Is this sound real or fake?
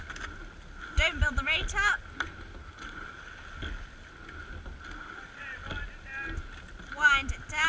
real